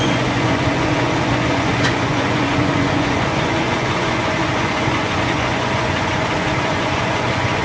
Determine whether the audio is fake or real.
fake